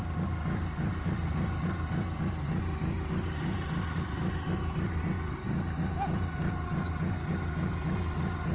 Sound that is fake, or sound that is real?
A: real